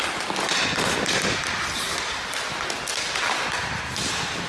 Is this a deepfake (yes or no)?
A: no